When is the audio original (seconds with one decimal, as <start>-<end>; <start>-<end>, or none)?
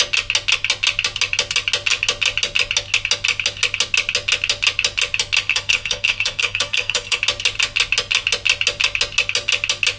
0.0-5.5; 7.2-10.0